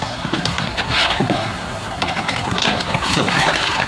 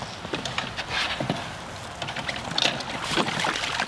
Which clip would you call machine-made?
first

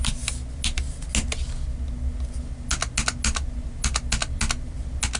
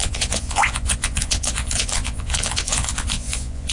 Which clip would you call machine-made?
second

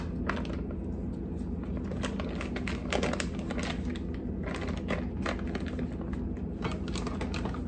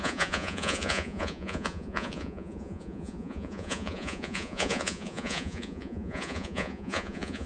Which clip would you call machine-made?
second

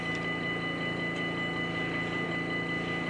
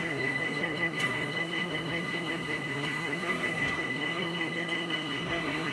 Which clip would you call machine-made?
second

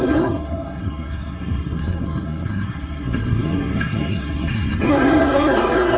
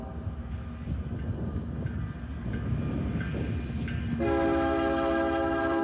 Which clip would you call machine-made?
first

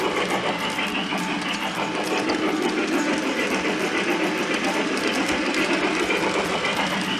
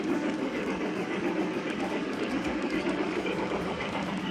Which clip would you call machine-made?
second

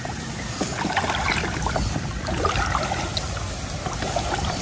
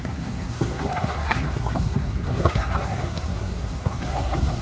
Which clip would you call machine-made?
second